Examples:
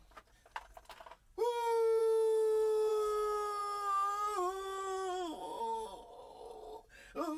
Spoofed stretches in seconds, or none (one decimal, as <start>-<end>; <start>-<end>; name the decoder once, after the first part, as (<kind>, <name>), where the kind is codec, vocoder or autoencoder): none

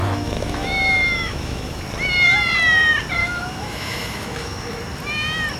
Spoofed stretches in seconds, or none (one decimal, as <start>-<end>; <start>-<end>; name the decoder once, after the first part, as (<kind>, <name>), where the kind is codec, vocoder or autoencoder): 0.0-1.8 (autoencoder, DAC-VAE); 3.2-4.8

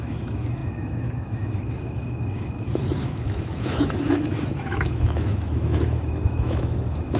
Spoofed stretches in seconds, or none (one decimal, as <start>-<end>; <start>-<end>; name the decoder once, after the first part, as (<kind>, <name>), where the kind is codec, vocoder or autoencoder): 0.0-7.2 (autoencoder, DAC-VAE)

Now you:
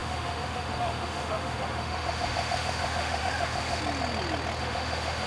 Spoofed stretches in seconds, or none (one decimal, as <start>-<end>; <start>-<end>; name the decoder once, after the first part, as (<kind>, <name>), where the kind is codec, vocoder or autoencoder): 0.0-3.8 (autoencoder, DAC-VAE); 4.6-5.3